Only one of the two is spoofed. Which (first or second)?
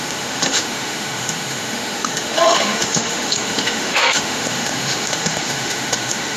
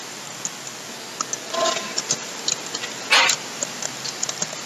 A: first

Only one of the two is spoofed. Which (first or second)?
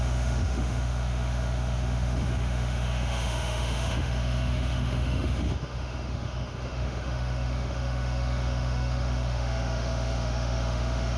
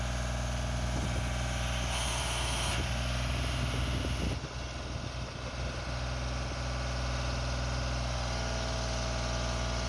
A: first